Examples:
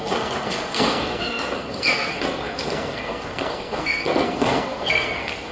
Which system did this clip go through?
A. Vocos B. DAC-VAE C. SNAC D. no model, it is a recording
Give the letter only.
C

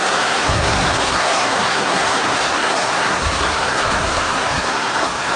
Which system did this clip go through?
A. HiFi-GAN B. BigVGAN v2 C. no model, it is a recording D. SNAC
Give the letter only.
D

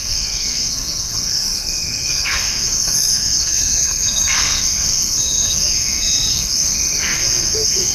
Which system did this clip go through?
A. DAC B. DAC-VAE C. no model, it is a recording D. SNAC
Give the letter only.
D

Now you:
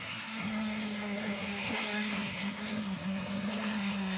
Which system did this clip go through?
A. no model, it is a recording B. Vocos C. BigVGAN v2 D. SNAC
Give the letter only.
D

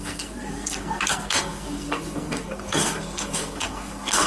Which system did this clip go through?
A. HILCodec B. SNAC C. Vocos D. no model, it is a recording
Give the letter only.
B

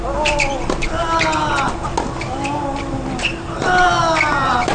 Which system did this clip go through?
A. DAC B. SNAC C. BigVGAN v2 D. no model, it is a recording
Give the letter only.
D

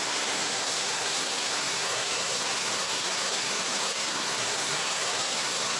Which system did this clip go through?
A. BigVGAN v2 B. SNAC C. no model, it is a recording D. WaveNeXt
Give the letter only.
B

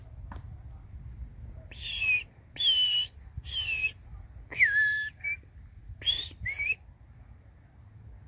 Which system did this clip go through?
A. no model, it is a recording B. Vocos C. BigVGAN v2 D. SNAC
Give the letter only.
A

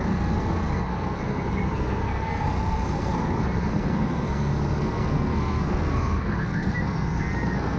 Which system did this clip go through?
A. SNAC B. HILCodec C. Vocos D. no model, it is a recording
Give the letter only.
A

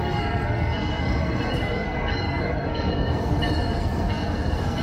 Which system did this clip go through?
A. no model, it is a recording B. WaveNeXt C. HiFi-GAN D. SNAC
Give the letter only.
D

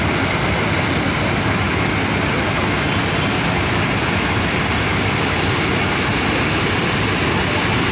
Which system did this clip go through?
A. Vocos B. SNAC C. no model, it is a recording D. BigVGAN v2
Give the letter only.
C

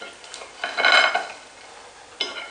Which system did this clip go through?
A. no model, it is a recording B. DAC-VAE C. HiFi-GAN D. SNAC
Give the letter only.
A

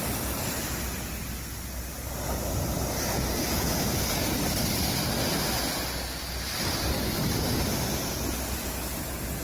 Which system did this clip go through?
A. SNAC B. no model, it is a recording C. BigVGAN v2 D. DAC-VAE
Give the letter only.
B